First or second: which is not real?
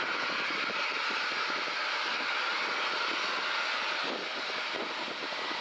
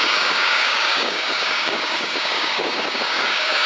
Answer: second